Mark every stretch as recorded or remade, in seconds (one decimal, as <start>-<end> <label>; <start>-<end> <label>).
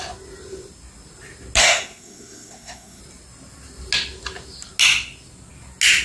0.0-1.6 recorded; 1.6-3.0 remade; 3.0-6.0 recorded